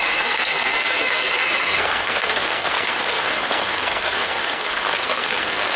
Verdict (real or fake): fake